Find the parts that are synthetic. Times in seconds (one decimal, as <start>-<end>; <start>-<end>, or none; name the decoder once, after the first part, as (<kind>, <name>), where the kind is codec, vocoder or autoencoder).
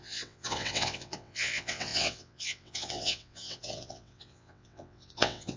0.0-5.6 (vocoder, WaveNeXt)